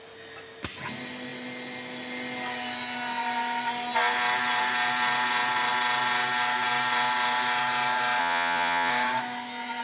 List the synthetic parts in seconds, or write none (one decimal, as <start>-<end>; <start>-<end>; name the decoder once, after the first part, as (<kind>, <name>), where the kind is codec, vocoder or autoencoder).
8.2-8.9 (vocoder, Vocos)